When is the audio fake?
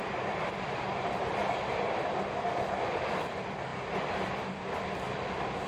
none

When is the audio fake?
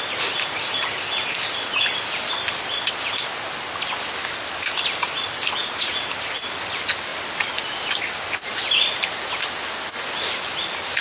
none